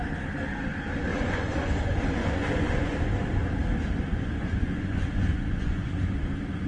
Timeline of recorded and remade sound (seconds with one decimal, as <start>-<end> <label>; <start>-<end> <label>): 0.0-1.1 recorded; 1.1-1.7 remade; 1.7-2.2 recorded; 2.2-3.1 remade; 3.1-4.1 recorded; 4.1-6.1 remade; 6.1-6.7 recorded